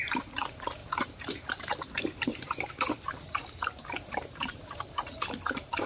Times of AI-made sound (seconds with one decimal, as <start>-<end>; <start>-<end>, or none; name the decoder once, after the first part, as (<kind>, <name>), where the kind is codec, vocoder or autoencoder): 0.0-5.9 (vocoder, BigVGAN v2)